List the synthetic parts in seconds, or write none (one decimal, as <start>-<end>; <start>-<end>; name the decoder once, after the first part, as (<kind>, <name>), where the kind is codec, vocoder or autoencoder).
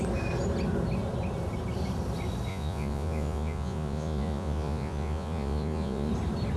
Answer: 2.5-6.1 (vocoder, Vocos)